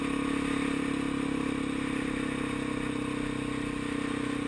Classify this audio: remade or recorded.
recorded